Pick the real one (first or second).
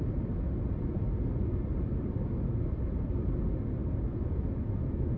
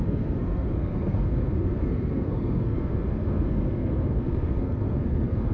first